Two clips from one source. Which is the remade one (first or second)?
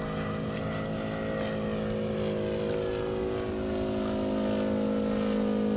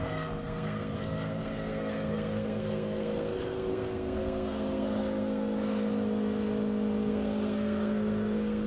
second